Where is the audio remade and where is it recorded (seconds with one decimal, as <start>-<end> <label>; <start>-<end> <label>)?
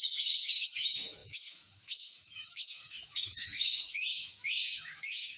0.0-5.4 remade